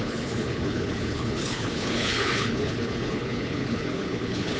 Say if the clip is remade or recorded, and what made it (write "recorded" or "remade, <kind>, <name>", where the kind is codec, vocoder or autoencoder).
remade, codec, HILCodec